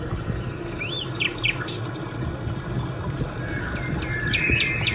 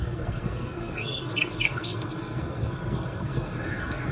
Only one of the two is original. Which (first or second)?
first